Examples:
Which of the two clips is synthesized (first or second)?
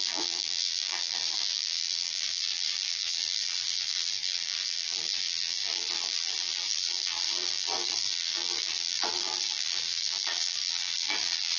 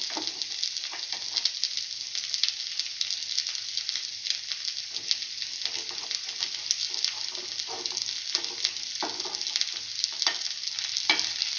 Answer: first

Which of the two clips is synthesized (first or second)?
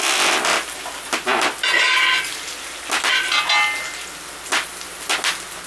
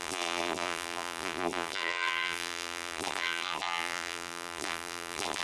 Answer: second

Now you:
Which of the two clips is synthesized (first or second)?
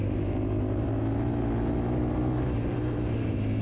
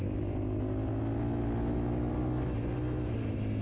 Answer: first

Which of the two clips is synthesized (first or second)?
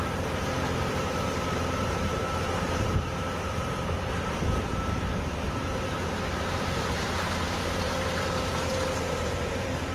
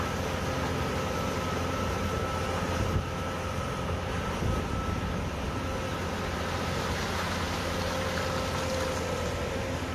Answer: first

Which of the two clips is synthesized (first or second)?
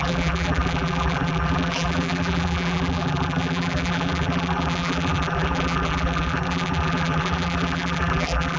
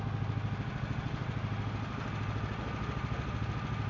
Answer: first